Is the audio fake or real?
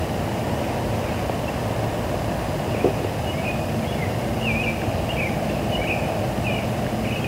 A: real